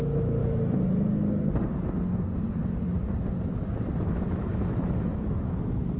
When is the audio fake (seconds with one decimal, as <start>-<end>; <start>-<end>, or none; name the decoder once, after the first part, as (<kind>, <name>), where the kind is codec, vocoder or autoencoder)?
0.0-0.4 (autoencoder, DAC-VAE); 4.0-6.0